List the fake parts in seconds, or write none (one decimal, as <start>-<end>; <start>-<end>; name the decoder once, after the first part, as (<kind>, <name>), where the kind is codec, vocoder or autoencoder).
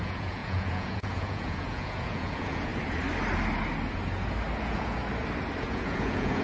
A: 0.0-2.7 (vocoder, Vocos); 4.6-5.0; 5.6-6.4